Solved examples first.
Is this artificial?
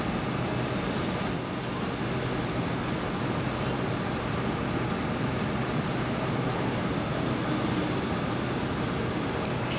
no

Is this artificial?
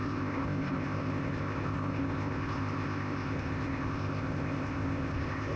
yes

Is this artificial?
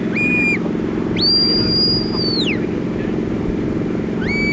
no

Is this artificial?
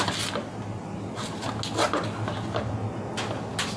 no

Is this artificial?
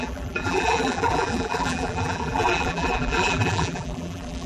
yes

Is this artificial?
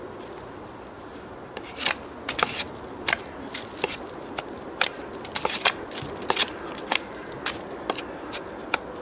no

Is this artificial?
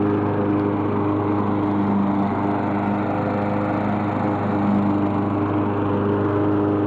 no